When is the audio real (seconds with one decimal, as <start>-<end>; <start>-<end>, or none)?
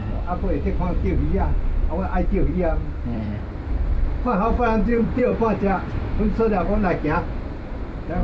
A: 0.0-2.7; 3.6-4.9; 6.2-8.2